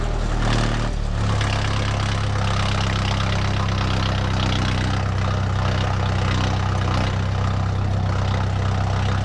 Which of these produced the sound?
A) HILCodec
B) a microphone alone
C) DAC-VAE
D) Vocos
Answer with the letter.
B